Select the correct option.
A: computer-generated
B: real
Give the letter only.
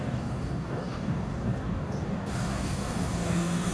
A